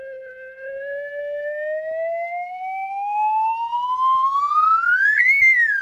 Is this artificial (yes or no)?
no